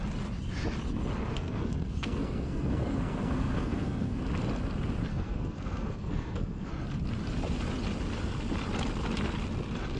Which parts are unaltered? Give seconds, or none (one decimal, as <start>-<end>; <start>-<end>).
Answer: 0.0-1.3; 4.2-5.1; 6.7-10.0